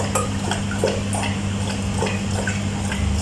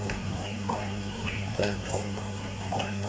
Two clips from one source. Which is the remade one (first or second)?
second